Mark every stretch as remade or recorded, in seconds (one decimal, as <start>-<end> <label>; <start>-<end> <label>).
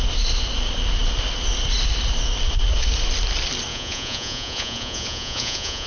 0.0-3.7 recorded; 3.7-5.9 remade